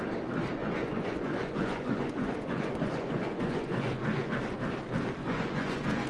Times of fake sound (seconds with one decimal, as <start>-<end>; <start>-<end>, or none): 0.6-4.3; 5.2-6.1